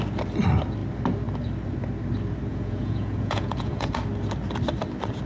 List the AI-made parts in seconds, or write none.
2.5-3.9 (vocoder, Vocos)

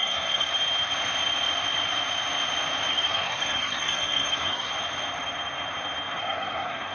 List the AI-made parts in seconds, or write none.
0.0-0.5 (codec, SNAC); 2.9-4.7; 6.2-6.9

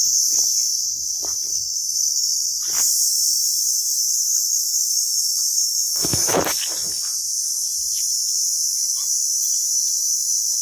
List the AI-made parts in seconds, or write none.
1.5-2.6 (autoencoder, DAC-VAE); 4.0-6.4

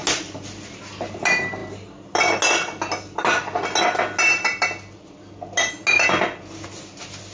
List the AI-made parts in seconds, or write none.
none

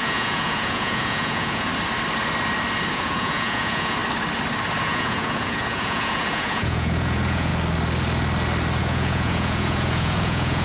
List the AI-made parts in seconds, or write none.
0.0-1.7 (vocoder, Vocos); 2.9-4.0; 4.8-7.5; 8.8-10.6

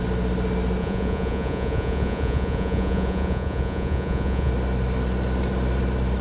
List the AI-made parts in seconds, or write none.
0.8-4.5 (vocoder, Vocos)